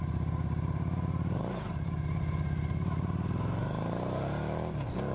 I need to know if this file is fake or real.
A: fake